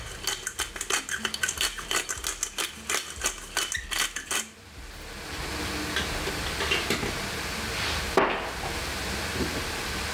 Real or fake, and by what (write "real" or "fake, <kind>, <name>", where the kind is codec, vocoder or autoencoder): real